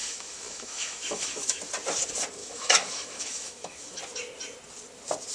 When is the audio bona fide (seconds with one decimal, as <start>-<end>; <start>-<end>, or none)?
1.6-2.4; 4.0-5.3